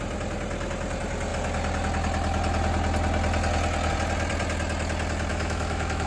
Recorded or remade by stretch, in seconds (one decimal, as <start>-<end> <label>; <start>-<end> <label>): 0.0-5.3 recorded; 5.3-6.1 remade